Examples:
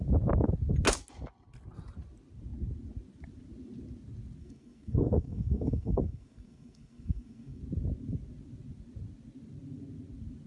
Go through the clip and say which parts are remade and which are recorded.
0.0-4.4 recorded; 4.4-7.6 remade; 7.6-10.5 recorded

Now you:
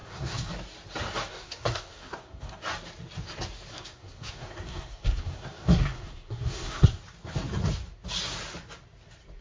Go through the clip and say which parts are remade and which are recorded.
0.0-0.5 remade; 0.5-1.3 recorded; 1.3-2.6 remade; 2.6-3.7 recorded; 3.7-7.0 remade; 7.0-9.4 recorded

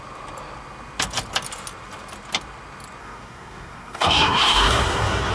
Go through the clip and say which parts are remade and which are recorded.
0.0-3.0 recorded; 3.0-5.3 remade

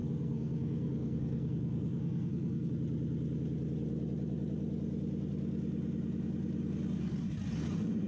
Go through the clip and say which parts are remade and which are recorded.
0.0-2.7 remade; 2.7-8.1 recorded

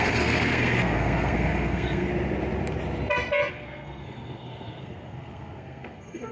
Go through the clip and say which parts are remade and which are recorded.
0.0-2.1 remade; 2.1-3.5 recorded; 3.5-6.3 remade